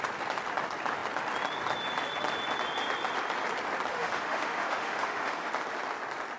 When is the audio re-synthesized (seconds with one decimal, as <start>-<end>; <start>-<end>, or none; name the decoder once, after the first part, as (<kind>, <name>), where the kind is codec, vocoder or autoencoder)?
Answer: 3.9-5.5 (autoencoder, DAC-VAE)